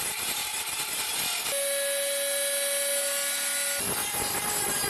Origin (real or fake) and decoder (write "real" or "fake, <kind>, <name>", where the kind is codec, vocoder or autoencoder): real